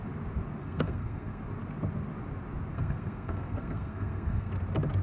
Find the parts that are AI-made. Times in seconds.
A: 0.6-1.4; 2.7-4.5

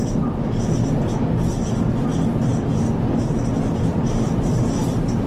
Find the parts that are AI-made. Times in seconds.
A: none

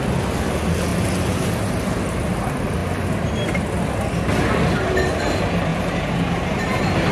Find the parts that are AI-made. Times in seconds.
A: 0.9-2.1; 5.7-7.1

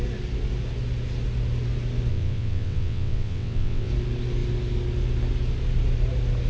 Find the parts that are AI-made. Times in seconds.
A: 2.1-3.9

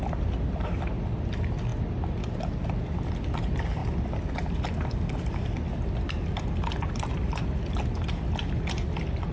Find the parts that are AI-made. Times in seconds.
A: none

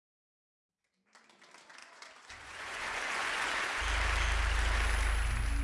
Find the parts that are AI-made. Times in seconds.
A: 1.8-3.8

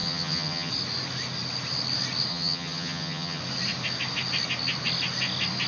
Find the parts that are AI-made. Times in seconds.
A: 0.0-0.7; 2.3-3.4